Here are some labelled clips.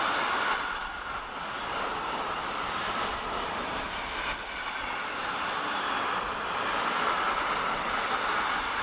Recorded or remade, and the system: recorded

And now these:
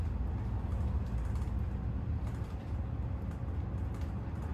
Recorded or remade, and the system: recorded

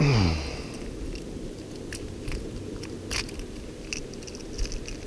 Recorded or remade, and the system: recorded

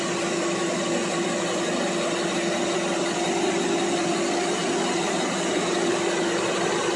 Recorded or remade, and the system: recorded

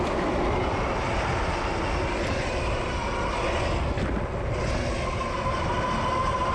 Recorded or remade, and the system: recorded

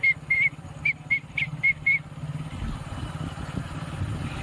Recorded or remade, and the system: recorded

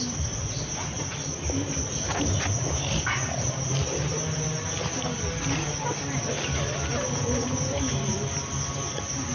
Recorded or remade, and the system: recorded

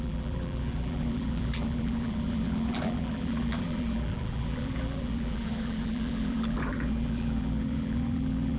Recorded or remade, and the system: remade, vocoder, BigVGAN v2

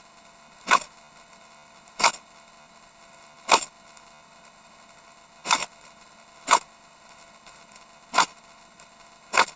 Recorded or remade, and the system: remade, codec, HILCodec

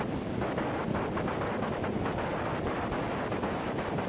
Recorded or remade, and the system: recorded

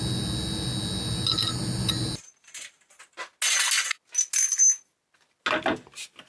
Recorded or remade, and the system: recorded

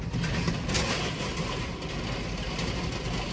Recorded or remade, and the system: recorded